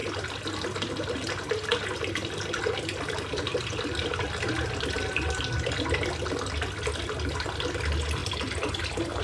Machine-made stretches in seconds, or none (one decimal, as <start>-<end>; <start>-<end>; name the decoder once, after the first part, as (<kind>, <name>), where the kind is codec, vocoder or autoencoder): none